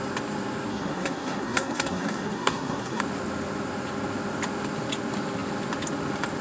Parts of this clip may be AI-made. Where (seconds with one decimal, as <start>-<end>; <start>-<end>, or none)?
0.7-3.0